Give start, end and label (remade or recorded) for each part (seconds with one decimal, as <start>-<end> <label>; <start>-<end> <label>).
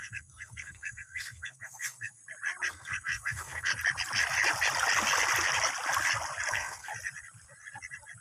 0.0-2.2 remade; 2.2-2.7 recorded; 2.7-3.7 remade; 3.7-6.5 recorded; 6.5-6.9 remade; 6.9-8.2 recorded